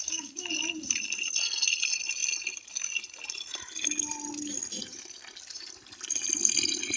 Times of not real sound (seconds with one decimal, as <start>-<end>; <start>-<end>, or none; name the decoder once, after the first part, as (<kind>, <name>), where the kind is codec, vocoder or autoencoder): 0.0-0.5 (autoencoder, DAC-VAE)